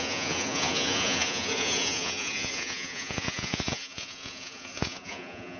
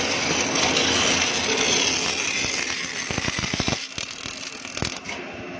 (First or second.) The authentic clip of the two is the second